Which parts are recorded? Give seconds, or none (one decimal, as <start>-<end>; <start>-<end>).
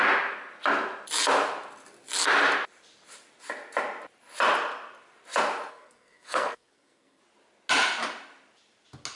0.0-5.7; 7.2-9.2